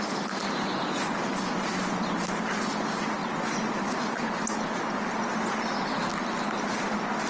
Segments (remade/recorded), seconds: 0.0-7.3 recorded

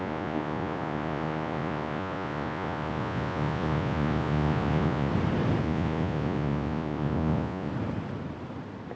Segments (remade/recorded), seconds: 0.0-5.1 remade; 5.1-5.6 recorded; 5.6-7.7 remade; 7.7-9.0 recorded

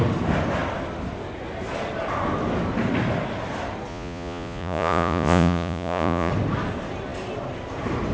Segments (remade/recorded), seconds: 0.0-3.9 recorded; 3.9-6.3 remade; 6.3-8.1 recorded

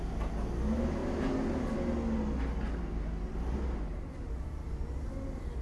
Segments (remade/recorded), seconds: 0.0-5.6 recorded